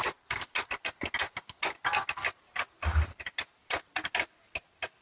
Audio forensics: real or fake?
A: real